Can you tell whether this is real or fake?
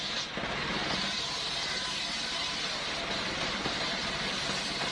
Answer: real